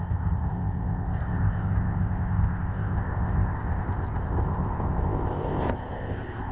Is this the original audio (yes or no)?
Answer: no